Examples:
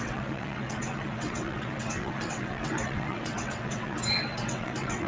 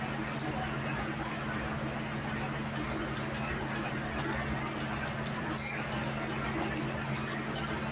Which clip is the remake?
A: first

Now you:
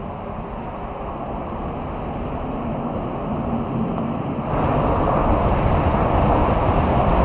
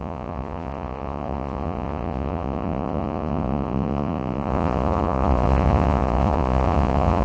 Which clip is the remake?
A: second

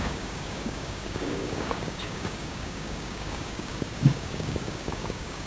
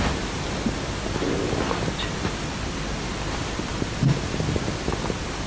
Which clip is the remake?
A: first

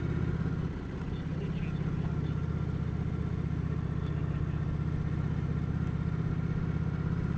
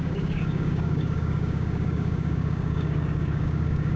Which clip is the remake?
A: second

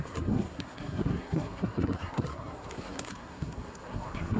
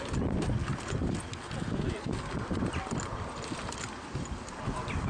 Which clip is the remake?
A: first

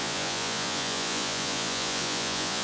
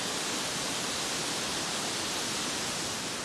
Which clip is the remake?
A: first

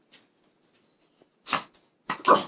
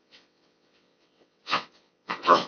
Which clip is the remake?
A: second